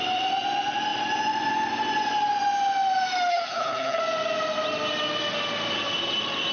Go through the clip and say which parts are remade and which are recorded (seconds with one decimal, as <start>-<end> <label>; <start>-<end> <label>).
0.0-3.3 recorded; 3.3-4.0 remade; 4.0-6.5 recorded